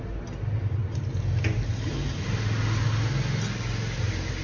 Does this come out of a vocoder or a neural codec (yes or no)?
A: no